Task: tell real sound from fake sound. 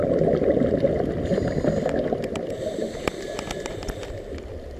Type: real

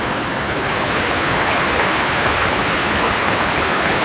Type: fake